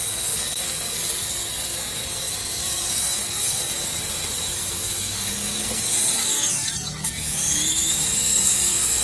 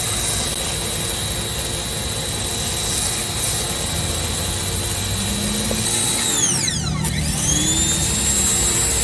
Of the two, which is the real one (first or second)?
second